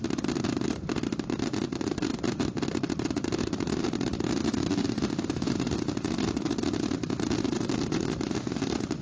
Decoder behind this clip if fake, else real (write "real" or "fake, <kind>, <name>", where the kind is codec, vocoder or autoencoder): fake, vocoder, BigVGAN v2